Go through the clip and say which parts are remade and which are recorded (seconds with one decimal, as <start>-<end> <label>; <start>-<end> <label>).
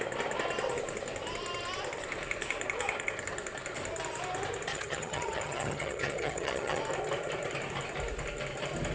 0.0-4.7 recorded; 4.7-6.8 remade; 6.8-8.9 recorded